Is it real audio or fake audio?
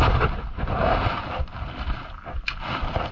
real